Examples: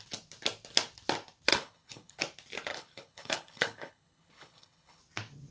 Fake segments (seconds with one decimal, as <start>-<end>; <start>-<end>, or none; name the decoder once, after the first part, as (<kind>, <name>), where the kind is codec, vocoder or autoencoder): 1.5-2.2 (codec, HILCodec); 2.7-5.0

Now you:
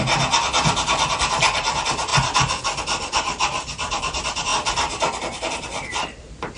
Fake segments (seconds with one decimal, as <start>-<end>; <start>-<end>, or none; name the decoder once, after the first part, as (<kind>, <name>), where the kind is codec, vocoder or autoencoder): none

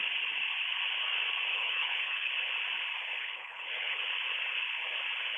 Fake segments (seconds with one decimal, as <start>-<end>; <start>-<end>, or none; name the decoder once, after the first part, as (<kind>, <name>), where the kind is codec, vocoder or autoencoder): 1.5-2.3 (codec, HILCodec); 3.2-4.0

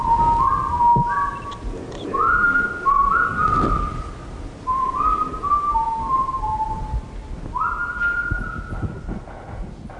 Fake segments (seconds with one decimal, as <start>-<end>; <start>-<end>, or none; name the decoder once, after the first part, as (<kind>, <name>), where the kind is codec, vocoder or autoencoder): none

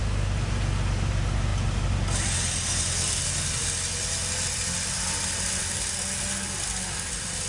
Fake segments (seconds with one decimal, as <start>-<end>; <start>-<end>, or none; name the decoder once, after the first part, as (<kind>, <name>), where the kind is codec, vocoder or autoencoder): none

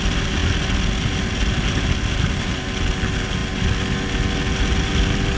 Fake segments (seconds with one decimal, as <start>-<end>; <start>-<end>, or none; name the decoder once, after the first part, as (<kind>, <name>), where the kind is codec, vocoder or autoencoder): none

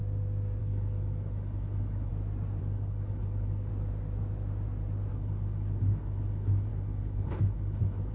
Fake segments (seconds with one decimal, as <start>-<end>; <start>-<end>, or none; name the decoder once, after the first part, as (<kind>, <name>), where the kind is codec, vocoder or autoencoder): 0.6-2.1 (codec, HILCodec); 2.6-3.7; 5.1-8.1